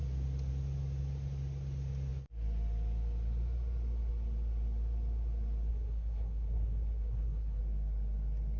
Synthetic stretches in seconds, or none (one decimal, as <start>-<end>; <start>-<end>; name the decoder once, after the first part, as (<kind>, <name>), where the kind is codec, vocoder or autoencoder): 5.7-7.6 (codec, SNAC)